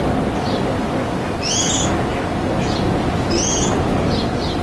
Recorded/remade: recorded